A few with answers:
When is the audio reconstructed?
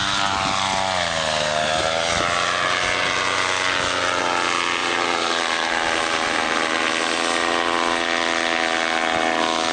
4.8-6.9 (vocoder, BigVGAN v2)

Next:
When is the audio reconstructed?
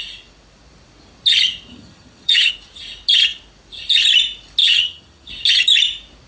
1.7-2.5 (vocoder, HiFi-GAN); 4.6-5.3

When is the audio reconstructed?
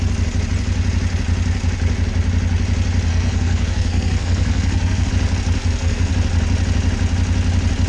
3.1-5.1 (codec, SNAC); 5.6-6.1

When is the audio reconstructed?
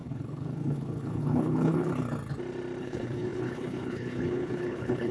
0.0-1.9 (codec, HILCodec); 2.8-5.1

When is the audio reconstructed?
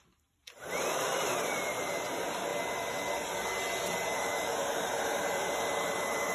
0.0-2.5 (vocoder, BigVGAN v2); 3.8-6.3